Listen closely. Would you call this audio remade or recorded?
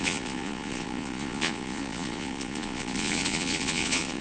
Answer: remade